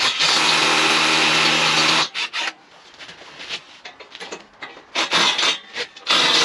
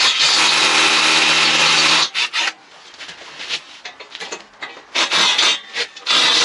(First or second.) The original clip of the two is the second